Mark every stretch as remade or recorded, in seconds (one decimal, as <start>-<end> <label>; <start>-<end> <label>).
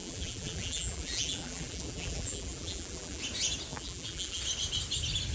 0.0-3.2 remade; 3.2-3.7 recorded; 3.7-4.4 remade; 4.4-5.3 recorded